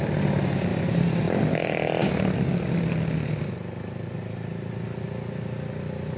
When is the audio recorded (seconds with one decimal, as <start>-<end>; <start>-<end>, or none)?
0.0-0.7; 2.0-6.2